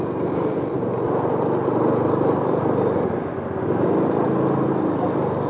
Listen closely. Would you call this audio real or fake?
real